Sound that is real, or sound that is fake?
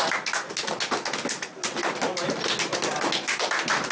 real